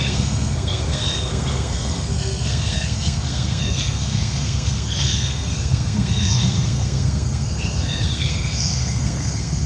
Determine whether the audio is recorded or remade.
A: remade